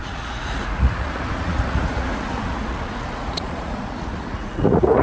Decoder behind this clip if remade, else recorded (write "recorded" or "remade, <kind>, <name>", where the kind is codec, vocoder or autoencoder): remade, vocoder, Vocos